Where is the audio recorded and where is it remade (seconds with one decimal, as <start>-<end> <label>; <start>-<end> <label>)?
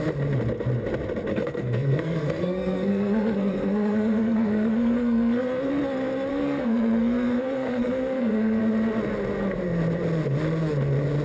0.0-1.3 recorded; 1.3-5.7 remade; 5.7-6.3 recorded; 6.3-8.6 remade; 8.6-11.2 recorded